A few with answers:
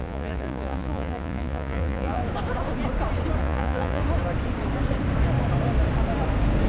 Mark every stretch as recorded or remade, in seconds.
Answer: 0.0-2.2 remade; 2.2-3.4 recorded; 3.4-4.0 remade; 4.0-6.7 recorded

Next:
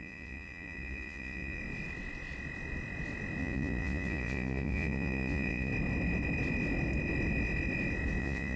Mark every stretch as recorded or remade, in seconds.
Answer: 0.0-1.6 remade; 1.6-3.4 recorded; 3.4-5.7 remade; 5.7-8.2 recorded; 8.2-8.6 remade

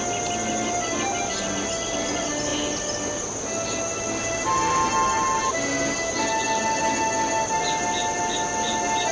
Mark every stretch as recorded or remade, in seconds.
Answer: 0.0-9.1 recorded

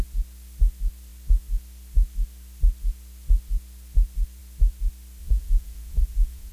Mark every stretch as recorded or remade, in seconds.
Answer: 0.0-5.2 recorded; 5.2-6.5 remade

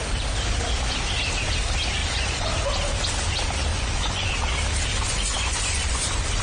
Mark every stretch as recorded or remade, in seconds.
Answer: 0.0-2.0 recorded; 2.0-2.5 remade; 2.5-3.7 recorded; 3.7-4.3 remade; 4.3-4.9 recorded; 4.9-6.4 remade

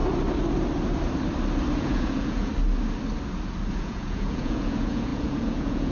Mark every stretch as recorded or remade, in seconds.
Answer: 0.0-1.8 recorded; 1.8-2.5 remade; 2.5-3.7 recorded; 3.7-5.9 remade

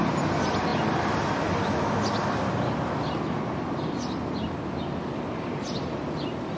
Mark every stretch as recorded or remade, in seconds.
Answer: 0.0-6.6 recorded